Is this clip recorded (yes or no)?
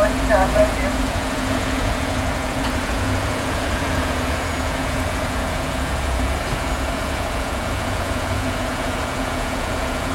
no